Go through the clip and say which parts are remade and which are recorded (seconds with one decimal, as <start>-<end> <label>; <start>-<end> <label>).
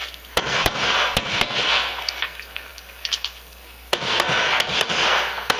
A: 0.0-5.6 remade